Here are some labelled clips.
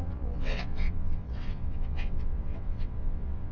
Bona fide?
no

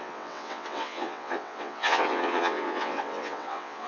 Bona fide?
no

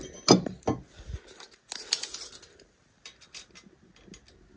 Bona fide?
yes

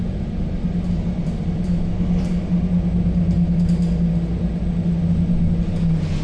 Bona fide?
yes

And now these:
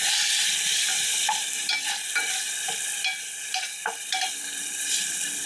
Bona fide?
yes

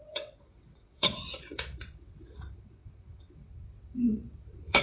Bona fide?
no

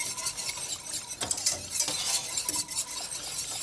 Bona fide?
yes